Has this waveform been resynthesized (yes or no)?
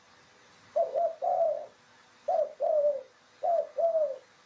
no